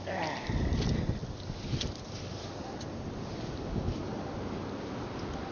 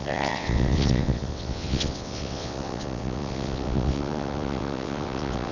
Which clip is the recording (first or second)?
first